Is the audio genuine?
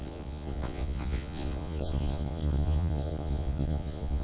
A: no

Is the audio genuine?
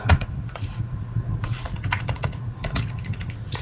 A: no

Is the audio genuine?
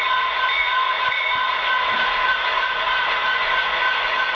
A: no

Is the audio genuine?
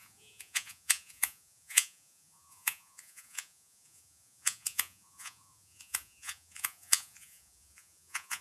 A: no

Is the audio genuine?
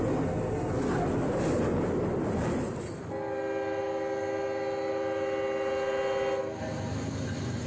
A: yes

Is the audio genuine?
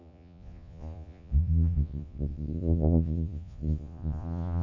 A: no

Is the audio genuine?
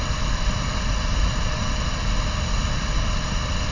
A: yes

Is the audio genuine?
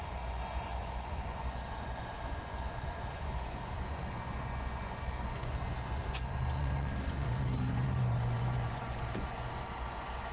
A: no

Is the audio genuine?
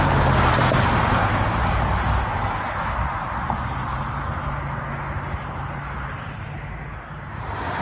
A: yes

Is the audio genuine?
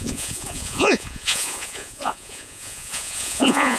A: no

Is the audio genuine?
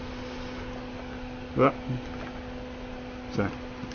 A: yes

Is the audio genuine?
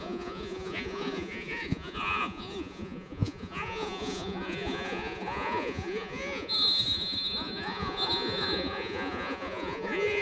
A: no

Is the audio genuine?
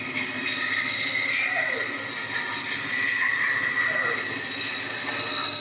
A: yes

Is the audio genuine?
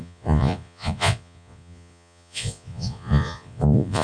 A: no